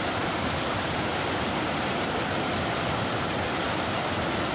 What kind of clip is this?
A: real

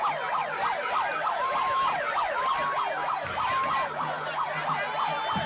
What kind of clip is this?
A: real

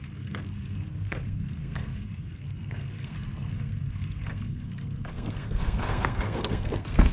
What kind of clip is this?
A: fake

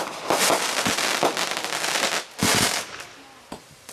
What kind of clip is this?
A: real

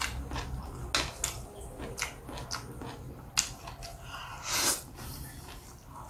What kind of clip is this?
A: real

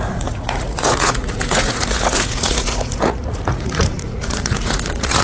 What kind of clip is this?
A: fake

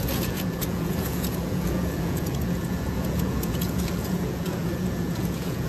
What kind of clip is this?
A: fake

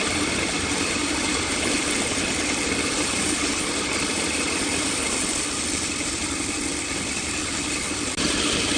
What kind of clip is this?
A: real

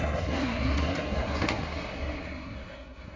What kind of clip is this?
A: fake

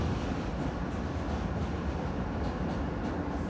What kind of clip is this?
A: real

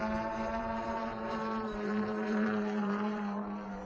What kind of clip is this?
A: fake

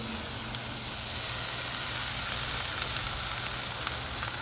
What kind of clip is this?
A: real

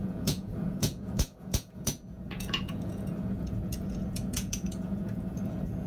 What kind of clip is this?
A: fake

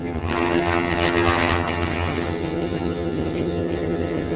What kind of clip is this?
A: fake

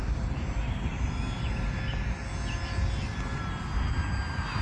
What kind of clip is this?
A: real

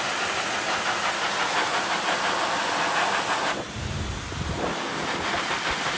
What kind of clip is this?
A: real